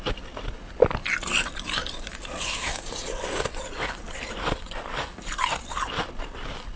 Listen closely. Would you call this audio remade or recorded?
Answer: recorded